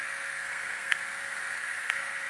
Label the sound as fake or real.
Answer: fake